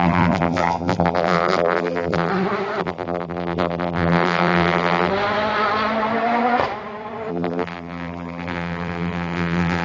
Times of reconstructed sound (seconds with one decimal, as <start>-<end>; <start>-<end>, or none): 0.0-2.3; 2.8-5.1; 7.3-9.8